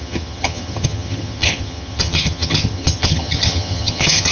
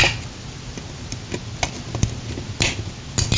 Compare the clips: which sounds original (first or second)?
second